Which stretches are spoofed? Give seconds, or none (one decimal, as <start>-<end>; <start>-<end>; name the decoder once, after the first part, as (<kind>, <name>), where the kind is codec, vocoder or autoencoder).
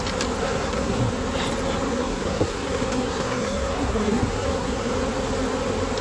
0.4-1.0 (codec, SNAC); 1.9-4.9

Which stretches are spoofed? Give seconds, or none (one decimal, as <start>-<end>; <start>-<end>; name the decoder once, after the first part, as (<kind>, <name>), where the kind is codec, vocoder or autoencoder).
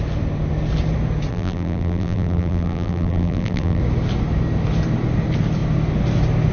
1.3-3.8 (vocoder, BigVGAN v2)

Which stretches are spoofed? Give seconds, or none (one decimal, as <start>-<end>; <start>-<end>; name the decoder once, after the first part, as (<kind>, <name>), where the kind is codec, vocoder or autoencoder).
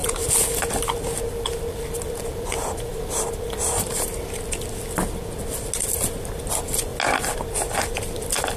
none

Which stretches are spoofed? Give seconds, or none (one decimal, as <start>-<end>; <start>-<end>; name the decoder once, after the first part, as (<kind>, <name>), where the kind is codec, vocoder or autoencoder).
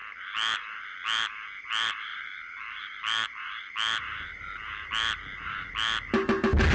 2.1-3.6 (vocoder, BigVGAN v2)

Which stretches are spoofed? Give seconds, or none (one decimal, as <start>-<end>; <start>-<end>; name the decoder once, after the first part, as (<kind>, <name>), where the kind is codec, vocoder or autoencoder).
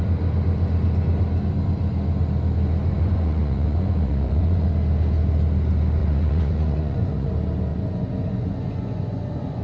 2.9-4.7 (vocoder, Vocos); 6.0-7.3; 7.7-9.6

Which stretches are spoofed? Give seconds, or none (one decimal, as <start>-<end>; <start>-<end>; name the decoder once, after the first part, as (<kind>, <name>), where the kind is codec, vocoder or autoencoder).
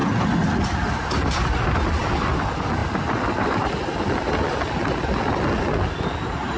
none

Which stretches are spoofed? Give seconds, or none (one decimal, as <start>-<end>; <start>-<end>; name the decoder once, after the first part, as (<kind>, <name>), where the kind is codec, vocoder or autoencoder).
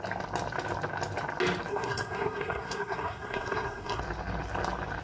1.7-4.0 (codec, SNAC)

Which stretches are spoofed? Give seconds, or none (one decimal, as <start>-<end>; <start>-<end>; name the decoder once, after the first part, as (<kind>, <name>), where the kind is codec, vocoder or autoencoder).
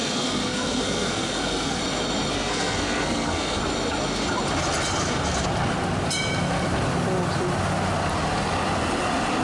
0.0-1.8 (codec, SNAC); 2.3-3.6